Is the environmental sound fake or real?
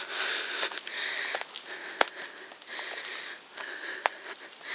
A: real